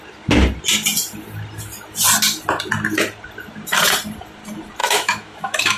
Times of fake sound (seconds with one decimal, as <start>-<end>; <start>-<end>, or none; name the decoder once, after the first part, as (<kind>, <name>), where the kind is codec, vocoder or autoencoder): 4.8-5.8 (autoencoder, DAC-VAE)